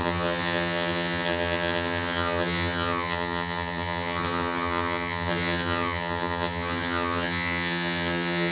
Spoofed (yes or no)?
yes